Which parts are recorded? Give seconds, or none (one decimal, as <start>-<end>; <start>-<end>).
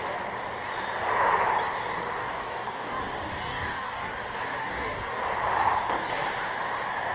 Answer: 0.0-2.2; 3.0-3.4; 4.1-4.6; 5.2-7.1